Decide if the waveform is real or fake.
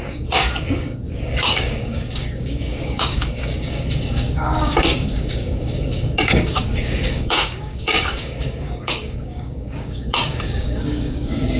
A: fake